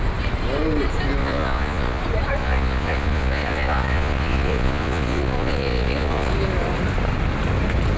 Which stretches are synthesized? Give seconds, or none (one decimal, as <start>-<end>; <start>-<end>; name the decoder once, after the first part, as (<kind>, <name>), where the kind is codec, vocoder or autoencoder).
1.2-2.0 (vocoder, Vocos); 2.4-6.3